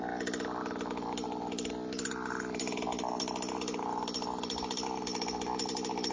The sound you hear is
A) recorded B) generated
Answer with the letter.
A